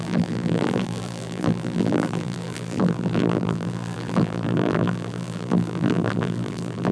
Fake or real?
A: fake